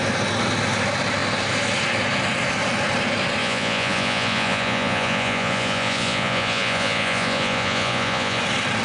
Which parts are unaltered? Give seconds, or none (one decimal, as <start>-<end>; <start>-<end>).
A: 0.0-3.4; 8.4-8.8